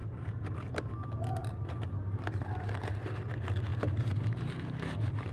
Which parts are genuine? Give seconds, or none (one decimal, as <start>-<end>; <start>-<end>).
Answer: 0.8-1.4; 2.9-3.7